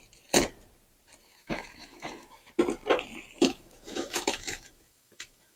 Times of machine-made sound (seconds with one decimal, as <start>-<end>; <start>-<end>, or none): 1.2-2.5; 3.4-5.6